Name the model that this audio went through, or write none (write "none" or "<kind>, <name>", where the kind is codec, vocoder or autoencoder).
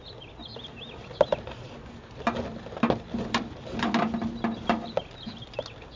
none